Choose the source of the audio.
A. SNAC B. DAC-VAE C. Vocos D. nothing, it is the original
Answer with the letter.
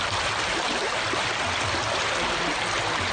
D